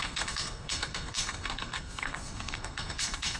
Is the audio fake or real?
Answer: fake